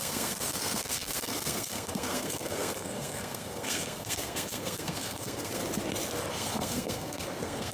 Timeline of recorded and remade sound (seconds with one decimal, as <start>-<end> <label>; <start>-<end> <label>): 0.0-5.6 remade; 5.6-6.3 recorded; 6.3-7.7 remade